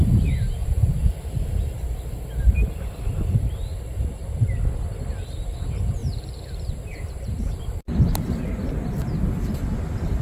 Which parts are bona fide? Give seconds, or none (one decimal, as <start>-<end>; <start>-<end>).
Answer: 0.0-0.6; 1.6-6.0; 7.6-10.2